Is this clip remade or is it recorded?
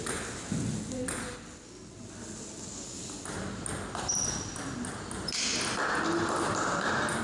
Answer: recorded